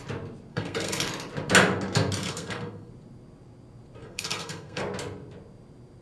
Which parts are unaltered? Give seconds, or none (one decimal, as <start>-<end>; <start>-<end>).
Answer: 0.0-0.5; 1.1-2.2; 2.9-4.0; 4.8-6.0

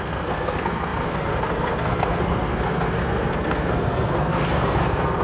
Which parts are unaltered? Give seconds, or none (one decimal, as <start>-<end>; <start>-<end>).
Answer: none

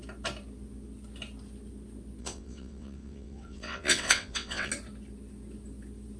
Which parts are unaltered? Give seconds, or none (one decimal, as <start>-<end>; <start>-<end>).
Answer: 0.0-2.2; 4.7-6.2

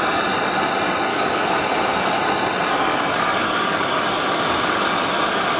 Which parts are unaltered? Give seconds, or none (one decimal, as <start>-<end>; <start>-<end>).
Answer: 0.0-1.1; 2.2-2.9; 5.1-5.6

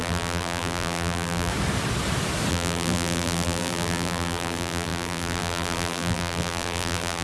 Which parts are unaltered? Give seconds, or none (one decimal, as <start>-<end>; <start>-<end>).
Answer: 1.5-2.5

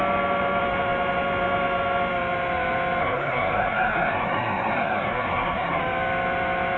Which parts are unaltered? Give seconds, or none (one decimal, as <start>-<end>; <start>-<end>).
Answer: 0.0-3.0; 5.8-6.8